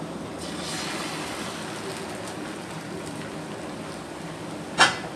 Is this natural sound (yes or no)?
yes